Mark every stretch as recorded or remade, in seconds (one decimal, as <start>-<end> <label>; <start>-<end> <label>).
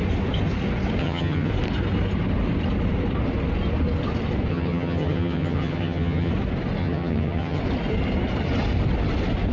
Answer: 0.0-1.0 recorded; 1.0-1.5 remade; 1.5-4.5 recorded; 4.5-6.3 remade; 6.3-6.8 recorded; 6.8-7.6 remade; 7.6-9.5 recorded